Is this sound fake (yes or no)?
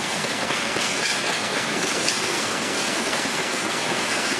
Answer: yes